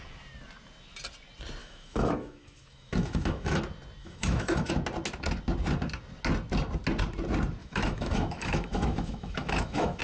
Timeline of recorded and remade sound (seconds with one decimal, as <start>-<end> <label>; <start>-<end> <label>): 0.0-1.6 recorded; 1.6-3.6 remade; 3.6-4.0 recorded; 4.0-4.7 remade; 4.7-7.6 recorded; 7.6-10.0 remade